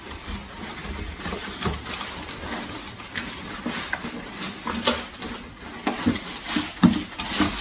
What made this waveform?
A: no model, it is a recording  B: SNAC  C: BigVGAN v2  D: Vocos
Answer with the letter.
A